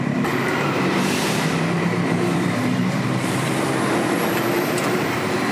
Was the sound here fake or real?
fake